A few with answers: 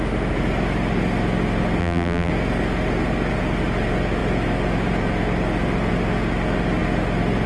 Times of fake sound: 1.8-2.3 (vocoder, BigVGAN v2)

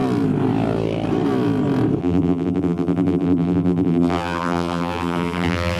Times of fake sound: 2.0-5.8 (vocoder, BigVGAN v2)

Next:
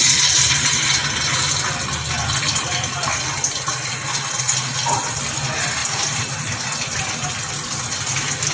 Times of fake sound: 5.8-6.3 (vocoder, BigVGAN v2)